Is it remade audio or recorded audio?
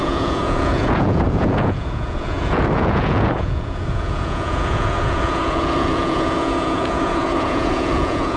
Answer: remade